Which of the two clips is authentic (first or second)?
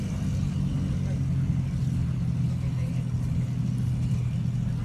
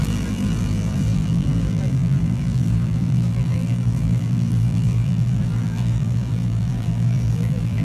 first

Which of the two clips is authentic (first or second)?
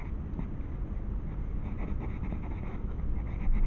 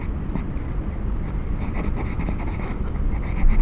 first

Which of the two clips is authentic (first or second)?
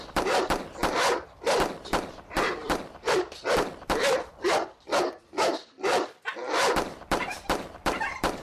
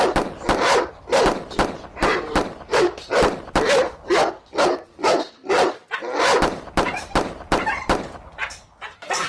second